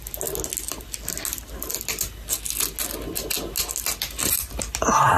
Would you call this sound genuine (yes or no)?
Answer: yes